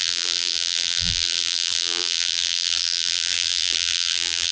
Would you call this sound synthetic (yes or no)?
yes